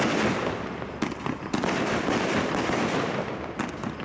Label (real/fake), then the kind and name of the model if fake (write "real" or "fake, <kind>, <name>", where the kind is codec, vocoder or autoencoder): real